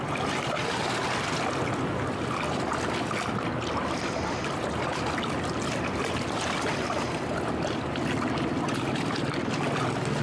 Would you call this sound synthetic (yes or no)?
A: no